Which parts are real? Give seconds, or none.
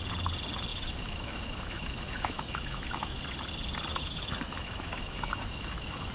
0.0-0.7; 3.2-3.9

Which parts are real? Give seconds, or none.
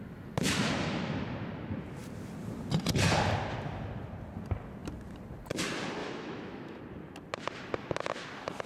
0.0-6.0; 6.8-8.7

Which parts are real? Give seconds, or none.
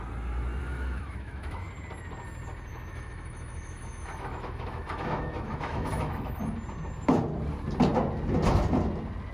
0.0-0.6; 1.7-2.7; 6.4-9.3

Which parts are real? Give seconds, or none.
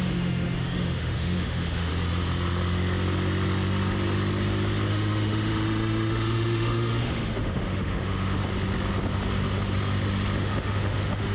1.9-4.9; 8.4-10.4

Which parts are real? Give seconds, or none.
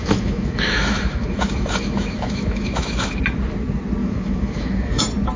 3.2-4.0; 5.0-5.4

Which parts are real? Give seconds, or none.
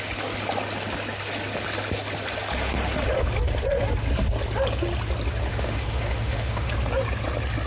0.0-5.5; 6.7-7.7